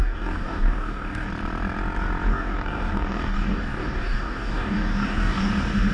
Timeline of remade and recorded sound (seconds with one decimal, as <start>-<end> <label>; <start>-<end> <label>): 0.0-1.3 remade; 1.3-2.3 recorded; 2.3-5.5 remade; 5.5-5.9 recorded